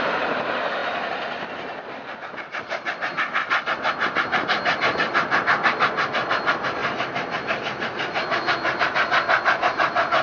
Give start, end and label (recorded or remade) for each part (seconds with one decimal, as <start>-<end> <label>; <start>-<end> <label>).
0.0-10.2 recorded